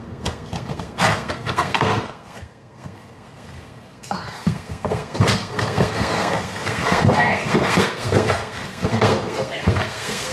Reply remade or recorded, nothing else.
remade